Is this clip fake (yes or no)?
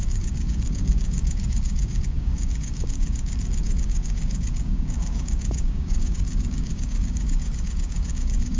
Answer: yes